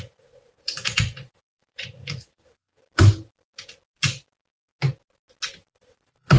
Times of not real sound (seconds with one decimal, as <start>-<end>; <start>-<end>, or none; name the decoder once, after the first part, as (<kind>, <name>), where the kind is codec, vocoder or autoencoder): 0.0-2.8 (vocoder, Vocos); 5.7-6.4